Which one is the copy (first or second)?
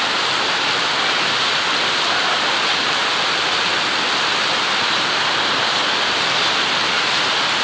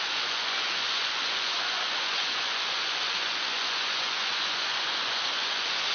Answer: second